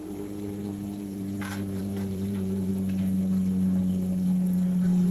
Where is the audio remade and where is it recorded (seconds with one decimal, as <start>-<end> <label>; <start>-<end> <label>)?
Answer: 0.0-2.7 remade; 2.7-5.1 recorded